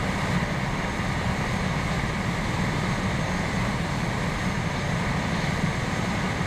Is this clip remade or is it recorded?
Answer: recorded